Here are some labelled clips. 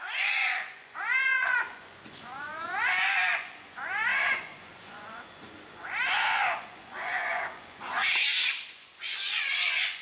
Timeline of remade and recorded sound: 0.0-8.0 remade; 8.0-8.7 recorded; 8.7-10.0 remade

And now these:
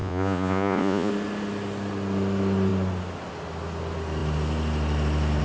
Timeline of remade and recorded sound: 0.0-1.1 remade; 1.1-5.4 recorded

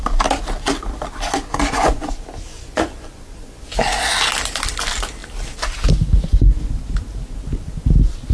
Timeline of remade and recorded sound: 0.0-1.5 recorded; 1.5-2.1 remade; 2.1-2.5 recorded; 2.5-3.6 remade; 3.6-8.3 recorded

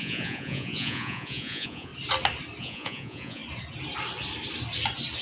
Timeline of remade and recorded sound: 0.0-1.9 remade; 1.9-2.6 recorded; 2.6-3.4 remade; 3.4-5.2 recorded